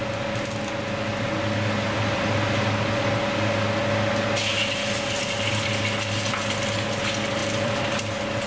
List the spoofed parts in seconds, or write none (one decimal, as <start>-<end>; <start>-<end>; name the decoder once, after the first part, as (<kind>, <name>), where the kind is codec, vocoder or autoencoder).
7.4-8.0 (vocoder, BigVGAN v2)